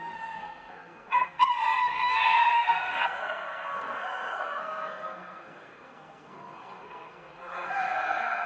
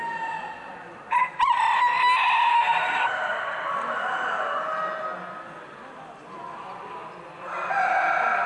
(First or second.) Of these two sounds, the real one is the second